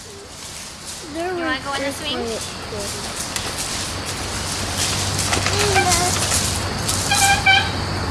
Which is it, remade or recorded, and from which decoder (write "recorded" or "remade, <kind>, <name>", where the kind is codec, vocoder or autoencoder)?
recorded